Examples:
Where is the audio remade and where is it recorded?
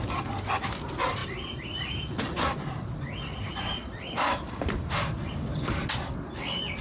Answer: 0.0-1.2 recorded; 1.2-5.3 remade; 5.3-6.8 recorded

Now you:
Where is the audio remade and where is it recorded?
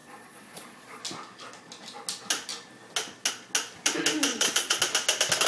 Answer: 0.0-1.0 remade; 1.0-4.3 recorded; 4.3-4.8 remade; 4.8-5.5 recorded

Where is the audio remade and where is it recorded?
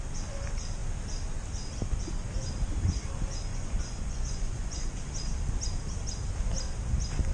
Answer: 0.0-3.5 recorded; 3.5-5.0 remade; 5.0-7.3 recorded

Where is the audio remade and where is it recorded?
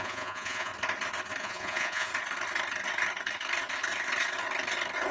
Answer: 0.0-0.7 remade; 0.7-1.4 recorded; 1.4-2.1 remade; 2.1-5.1 recorded